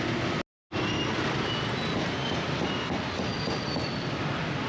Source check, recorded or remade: recorded